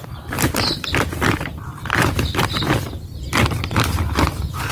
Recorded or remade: recorded